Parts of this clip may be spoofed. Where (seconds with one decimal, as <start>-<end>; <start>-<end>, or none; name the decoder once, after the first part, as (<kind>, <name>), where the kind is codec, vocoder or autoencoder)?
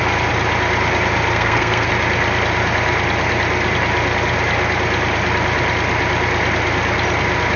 1.3-1.9 (codec, SNAC)